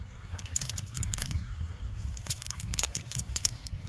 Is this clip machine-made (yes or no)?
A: yes